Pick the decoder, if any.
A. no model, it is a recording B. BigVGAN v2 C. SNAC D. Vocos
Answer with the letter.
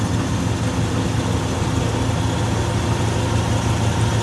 A